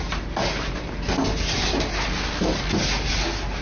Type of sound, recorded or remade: recorded